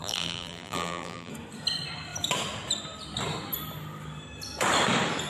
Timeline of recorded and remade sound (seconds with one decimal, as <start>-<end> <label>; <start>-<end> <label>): 0.0-1.3 remade; 1.3-5.3 recorded